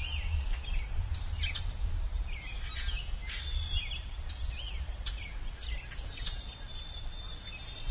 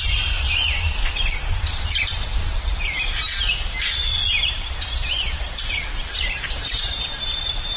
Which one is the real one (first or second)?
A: first